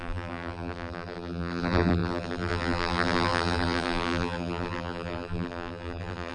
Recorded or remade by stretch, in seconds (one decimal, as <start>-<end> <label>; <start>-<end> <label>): 0.0-6.3 remade